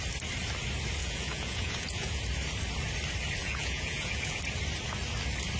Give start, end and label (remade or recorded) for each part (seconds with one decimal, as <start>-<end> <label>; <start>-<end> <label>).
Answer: 0.0-1.0 recorded; 1.0-2.2 remade; 2.2-3.4 recorded; 3.4-4.4 remade; 4.4-5.6 recorded